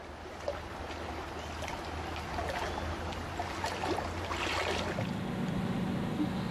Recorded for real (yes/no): yes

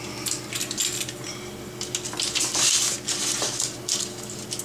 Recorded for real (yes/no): yes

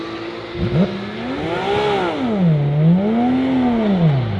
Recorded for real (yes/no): yes